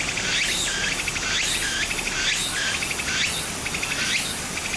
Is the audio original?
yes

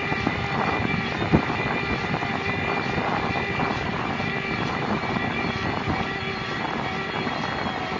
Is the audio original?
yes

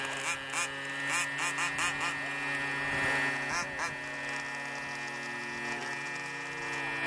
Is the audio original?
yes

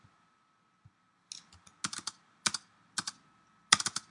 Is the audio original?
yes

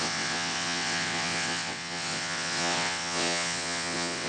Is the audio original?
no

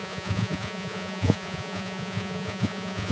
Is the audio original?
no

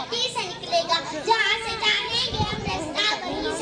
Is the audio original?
yes